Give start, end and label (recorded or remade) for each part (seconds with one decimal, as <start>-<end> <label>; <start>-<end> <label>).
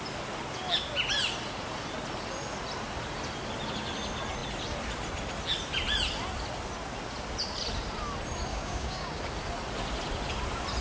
0.0-8.5 recorded; 8.5-9.2 remade; 9.2-10.8 recorded